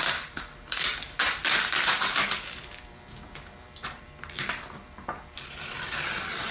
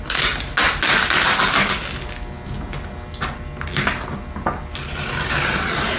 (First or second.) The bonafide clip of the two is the second